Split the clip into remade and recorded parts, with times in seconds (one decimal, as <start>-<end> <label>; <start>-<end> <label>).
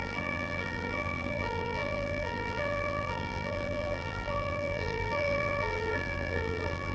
0.0-6.9 remade